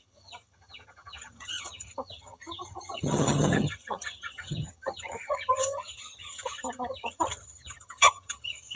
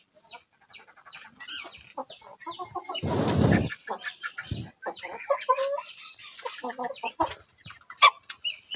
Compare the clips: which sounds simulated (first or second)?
first